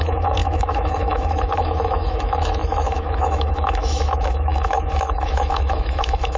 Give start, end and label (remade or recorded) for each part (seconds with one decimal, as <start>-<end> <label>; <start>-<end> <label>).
0.0-6.4 remade